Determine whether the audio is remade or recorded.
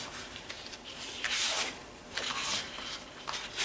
recorded